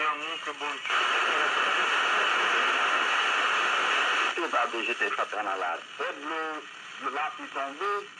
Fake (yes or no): no